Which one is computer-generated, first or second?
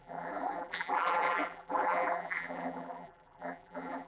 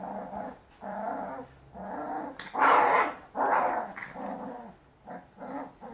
first